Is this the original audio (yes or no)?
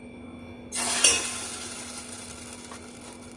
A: yes